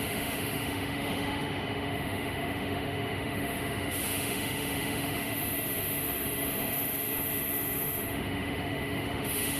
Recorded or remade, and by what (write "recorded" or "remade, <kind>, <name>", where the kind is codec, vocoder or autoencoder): remade, autoencoder, DAC-VAE